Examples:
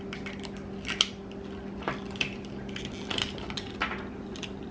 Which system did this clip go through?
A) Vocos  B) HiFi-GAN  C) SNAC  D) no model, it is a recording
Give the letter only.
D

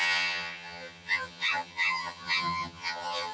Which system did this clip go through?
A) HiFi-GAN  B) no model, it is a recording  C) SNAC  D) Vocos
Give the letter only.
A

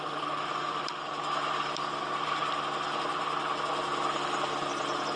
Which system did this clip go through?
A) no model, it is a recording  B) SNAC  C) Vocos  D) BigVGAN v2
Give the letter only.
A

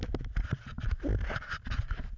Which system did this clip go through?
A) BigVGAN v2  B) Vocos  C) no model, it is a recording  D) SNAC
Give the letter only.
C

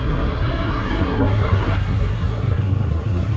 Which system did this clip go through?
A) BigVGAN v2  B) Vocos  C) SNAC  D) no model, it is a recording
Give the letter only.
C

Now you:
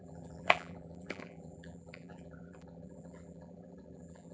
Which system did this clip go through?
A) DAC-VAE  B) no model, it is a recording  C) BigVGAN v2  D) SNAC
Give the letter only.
C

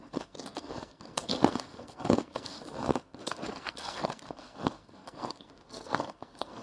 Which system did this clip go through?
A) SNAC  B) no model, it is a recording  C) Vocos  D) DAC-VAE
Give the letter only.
A